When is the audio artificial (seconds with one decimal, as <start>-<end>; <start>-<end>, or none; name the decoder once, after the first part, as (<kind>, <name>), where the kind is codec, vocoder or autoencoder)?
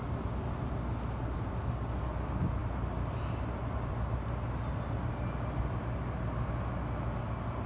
none